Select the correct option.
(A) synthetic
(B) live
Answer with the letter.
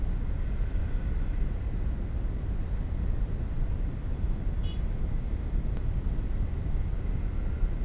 B